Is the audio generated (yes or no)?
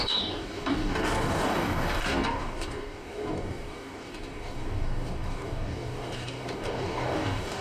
yes